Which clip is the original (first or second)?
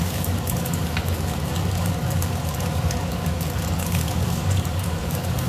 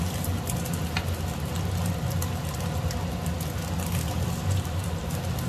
second